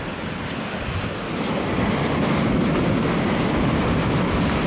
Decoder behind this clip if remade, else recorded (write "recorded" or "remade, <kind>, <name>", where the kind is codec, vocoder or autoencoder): recorded